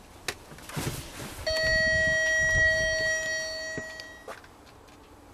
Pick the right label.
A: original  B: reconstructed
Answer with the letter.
A